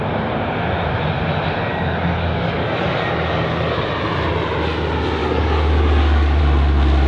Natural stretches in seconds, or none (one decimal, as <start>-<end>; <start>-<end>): 0.0-1.7; 3.8-5.2; 6.4-7.1